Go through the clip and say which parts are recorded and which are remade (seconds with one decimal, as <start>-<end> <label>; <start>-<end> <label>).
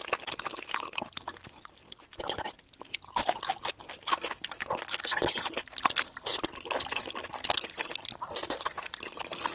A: 0.0-9.5 recorded